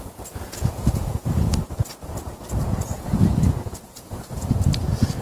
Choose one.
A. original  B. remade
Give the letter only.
B